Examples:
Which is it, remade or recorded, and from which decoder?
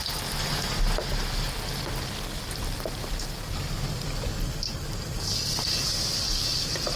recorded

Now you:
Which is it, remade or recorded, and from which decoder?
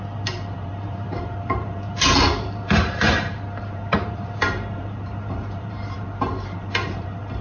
remade, vocoder, BigVGAN v2